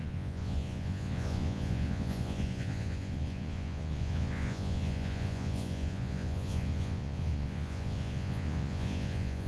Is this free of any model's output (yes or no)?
no